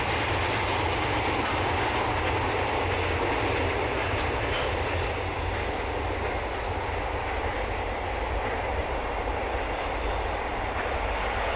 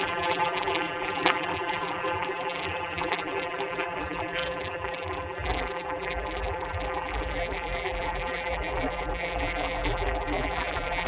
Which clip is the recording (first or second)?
first